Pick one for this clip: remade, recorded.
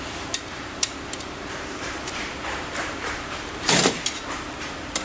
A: remade